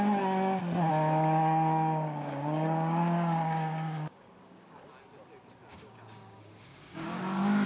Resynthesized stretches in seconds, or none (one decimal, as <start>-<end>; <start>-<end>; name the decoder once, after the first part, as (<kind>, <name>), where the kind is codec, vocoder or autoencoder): 0.9-4.8 (codec, DAC); 5.7-7.2